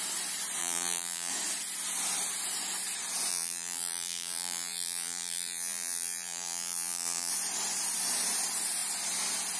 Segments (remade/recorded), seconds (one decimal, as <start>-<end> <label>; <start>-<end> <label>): 0.0-0.6 recorded; 0.6-1.3 remade; 1.3-3.3 recorded; 3.3-7.3 remade; 7.3-9.6 recorded